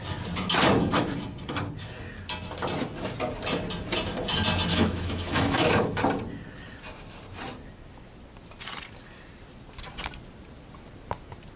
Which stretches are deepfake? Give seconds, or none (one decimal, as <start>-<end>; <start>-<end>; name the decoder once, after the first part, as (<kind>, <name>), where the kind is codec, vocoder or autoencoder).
4.7-6.0 (autoencoder, DAC-VAE)